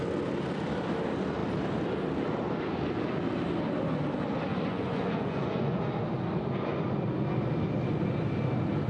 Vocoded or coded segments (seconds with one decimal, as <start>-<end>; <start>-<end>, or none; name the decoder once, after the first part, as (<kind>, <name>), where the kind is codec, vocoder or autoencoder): 4.5-5.8 (vocoder, Vocos)